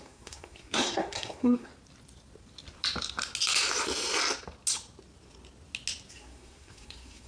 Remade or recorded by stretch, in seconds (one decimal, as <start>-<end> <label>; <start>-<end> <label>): 0.0-1.7 remade; 1.7-6.1 recorded; 6.1-7.3 remade